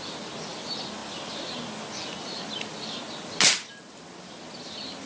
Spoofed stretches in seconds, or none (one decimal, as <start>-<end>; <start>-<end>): none